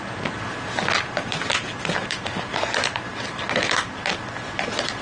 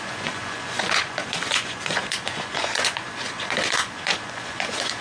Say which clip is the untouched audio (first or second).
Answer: first